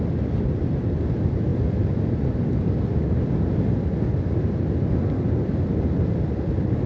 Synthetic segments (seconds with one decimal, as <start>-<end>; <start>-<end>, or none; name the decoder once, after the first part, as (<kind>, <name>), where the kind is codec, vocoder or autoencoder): none